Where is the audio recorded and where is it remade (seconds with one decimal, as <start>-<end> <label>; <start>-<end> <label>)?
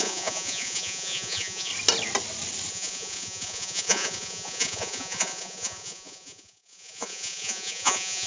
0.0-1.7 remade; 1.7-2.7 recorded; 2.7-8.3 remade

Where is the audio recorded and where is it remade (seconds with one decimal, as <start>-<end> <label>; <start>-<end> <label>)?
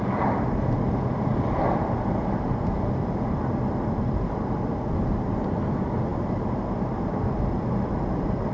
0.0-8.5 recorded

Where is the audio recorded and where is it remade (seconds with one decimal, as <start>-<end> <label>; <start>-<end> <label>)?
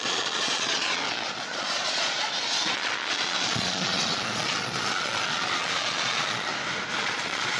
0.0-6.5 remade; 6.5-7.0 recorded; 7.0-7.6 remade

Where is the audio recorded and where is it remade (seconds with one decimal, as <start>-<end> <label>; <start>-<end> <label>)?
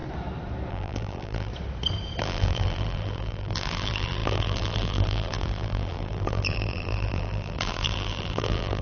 0.0-0.7 recorded; 0.7-1.5 remade; 1.5-2.2 recorded; 2.2-8.8 remade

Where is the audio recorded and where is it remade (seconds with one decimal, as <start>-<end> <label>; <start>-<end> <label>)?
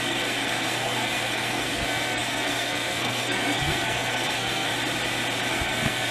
0.0-4.7 remade; 4.7-5.5 recorded; 5.5-6.1 remade